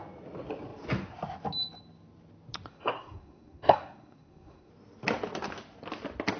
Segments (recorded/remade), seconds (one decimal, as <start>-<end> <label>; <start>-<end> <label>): 0.0-2.7 recorded; 2.7-4.7 remade; 4.7-6.4 recorded